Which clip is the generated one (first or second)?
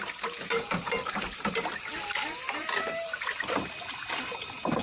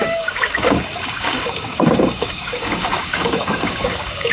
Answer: second